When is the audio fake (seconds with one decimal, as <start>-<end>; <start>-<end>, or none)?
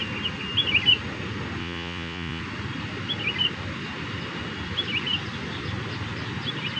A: 1.6-2.4